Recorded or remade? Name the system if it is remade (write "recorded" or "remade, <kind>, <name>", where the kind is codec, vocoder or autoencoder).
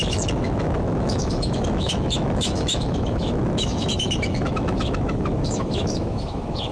remade, autoencoder, DAC-VAE